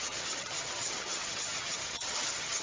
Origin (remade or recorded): remade